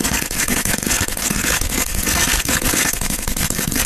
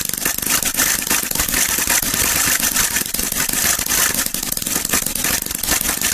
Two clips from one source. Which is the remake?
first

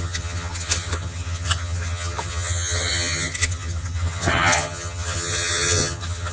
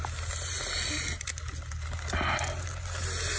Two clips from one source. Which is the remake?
first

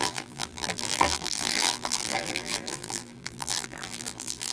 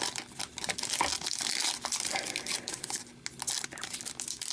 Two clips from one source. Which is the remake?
first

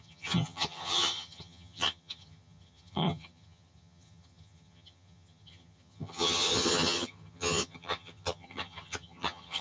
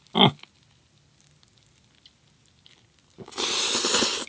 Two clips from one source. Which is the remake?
first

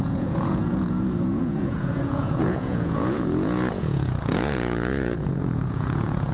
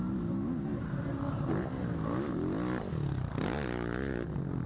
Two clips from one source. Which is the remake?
first